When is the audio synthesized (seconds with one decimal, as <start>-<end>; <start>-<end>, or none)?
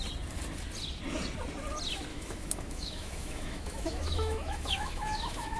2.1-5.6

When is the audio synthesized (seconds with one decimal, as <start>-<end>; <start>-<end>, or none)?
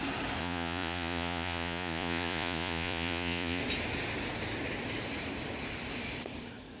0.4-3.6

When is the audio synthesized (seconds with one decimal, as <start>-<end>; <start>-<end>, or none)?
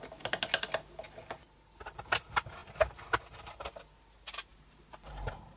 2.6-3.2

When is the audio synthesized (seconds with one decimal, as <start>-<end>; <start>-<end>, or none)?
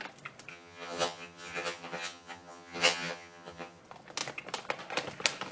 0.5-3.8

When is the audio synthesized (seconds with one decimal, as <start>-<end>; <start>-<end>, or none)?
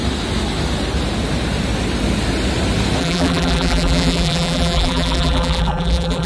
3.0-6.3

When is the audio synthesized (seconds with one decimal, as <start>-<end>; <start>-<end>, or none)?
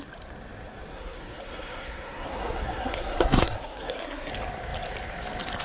0.9-4.3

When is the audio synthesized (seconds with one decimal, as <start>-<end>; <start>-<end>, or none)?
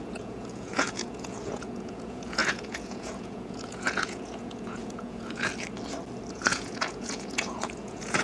0.0-5.5; 6.3-8.2